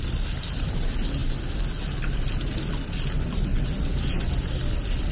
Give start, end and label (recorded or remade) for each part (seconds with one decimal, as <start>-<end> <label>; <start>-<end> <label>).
0.0-5.1 recorded